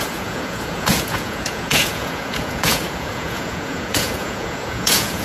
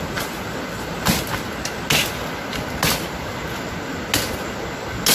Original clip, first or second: second